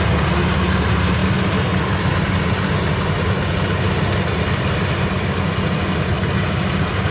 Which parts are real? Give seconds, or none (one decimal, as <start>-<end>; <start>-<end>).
0.0-7.1